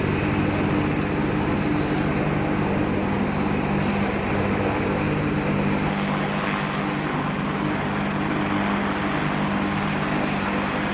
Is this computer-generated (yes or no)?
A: no